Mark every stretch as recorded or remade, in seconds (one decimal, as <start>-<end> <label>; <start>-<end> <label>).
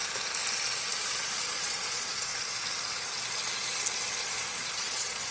0.0-1.0 recorded; 1.0-2.3 remade; 2.3-4.2 recorded; 4.2-5.3 remade